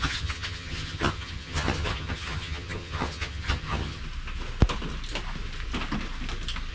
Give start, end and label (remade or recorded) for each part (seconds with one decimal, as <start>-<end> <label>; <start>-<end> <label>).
0.0-4.0 remade; 4.0-6.7 recorded